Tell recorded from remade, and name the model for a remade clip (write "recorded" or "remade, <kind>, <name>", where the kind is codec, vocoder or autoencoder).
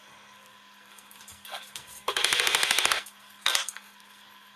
remade, codec, SNAC